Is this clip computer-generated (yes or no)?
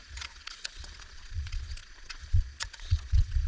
yes